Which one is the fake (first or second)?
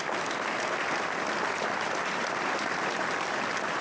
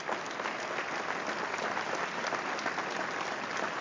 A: first